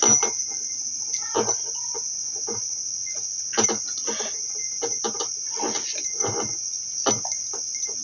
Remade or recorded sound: recorded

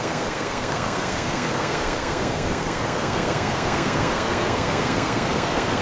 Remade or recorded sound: remade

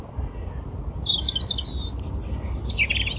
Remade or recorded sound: recorded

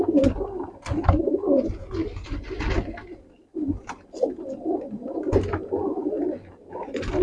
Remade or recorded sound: recorded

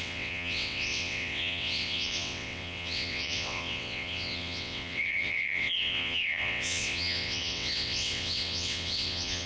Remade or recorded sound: remade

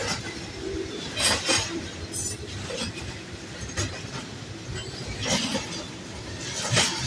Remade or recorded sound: recorded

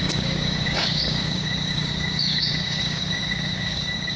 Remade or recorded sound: remade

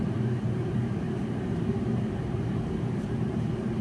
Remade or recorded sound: remade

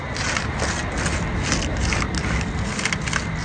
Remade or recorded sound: recorded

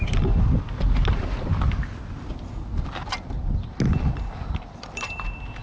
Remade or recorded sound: recorded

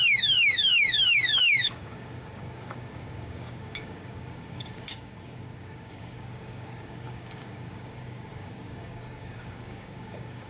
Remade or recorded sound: remade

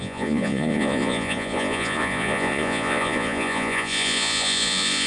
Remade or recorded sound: remade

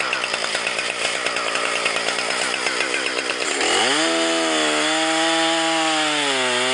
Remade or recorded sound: recorded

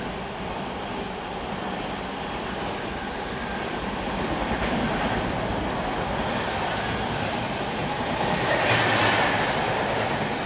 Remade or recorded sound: recorded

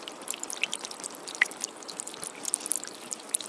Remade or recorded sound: recorded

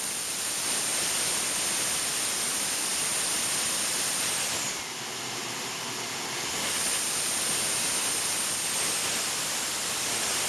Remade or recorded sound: recorded